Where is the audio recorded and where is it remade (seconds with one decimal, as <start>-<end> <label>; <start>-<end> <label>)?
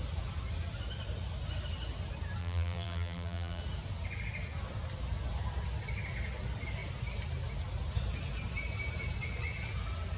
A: 0.0-2.4 recorded; 2.4-3.6 remade; 3.6-10.2 recorded